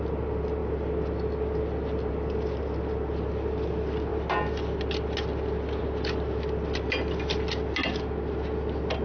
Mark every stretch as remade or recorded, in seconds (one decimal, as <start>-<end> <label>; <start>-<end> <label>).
0.0-9.0 recorded